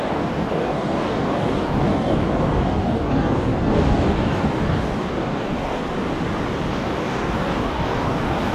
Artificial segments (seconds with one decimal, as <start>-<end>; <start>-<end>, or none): 0.0-5.8; 6.7-8.5